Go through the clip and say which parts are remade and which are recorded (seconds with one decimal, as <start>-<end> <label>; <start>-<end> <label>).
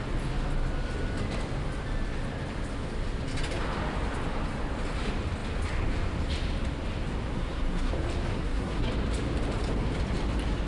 0.0-7.3 recorded; 7.3-7.9 remade; 7.9-8.3 recorded; 8.3-8.9 remade; 8.9-10.7 recorded